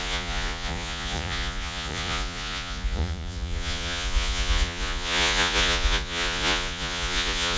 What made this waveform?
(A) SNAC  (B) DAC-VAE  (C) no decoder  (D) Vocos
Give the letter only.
D